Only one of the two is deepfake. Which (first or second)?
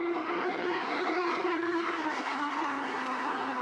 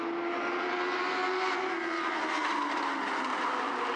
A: first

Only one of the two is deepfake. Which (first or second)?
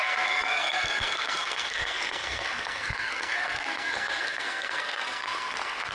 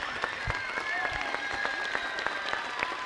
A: first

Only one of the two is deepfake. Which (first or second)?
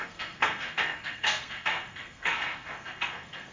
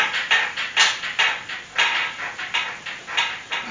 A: first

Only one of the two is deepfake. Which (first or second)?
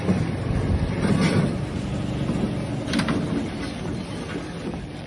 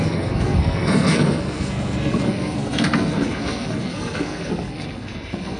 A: second